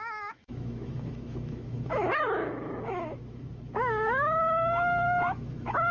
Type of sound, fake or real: fake